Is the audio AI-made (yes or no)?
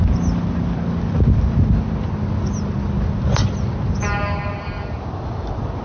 no